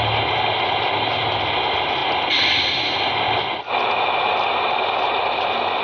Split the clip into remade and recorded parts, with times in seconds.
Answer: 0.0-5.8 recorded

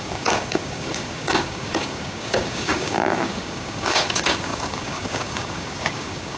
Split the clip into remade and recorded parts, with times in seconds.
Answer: 0.0-6.4 remade

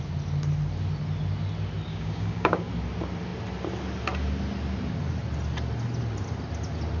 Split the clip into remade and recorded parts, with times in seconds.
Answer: 0.0-1.9 recorded; 1.9-2.7 remade; 2.7-7.0 recorded

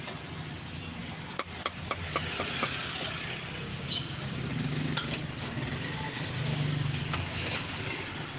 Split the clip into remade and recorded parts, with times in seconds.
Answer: 0.0-3.7 recorded; 3.7-7.8 remade; 7.8-8.4 recorded

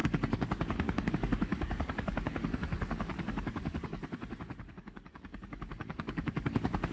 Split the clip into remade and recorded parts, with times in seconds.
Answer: 0.0-4.0 remade; 4.0-4.7 recorded; 4.7-6.9 remade

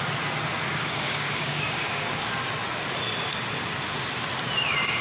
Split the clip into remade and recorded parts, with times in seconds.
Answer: 0.0-0.6 recorded; 0.6-2.2 remade; 2.2-5.0 recorded

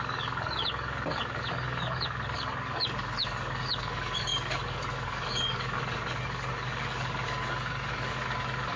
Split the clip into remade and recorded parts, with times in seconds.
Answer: 0.0-8.8 remade

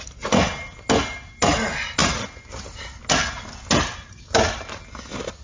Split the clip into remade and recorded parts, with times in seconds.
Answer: 0.0-5.4 recorded